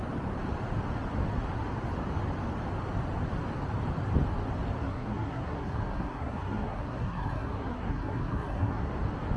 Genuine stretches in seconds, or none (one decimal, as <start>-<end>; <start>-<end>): 0.0-4.8; 8.9-9.4